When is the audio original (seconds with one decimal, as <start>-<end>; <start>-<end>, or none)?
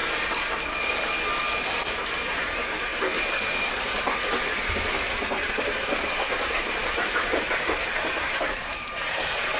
0.0-1.9